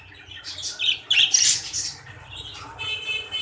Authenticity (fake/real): real